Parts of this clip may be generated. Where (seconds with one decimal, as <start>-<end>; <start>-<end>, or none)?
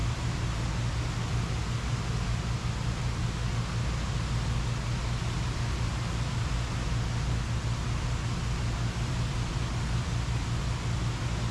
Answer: none